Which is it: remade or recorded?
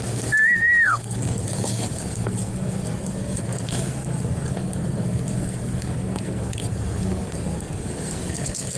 remade